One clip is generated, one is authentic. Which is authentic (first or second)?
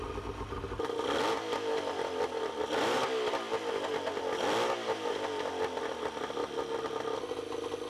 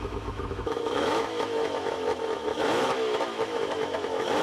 first